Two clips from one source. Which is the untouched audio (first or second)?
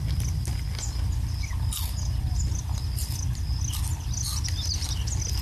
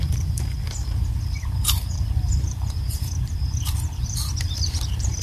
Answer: first